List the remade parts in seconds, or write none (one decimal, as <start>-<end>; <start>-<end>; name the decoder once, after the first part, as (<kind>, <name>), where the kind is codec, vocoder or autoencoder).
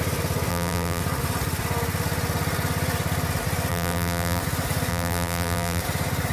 0.5-1.0 (vocoder, BigVGAN v2); 3.7-4.4; 4.9-5.8